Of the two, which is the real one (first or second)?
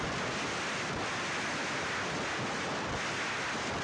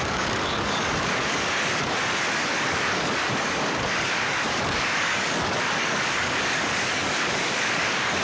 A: first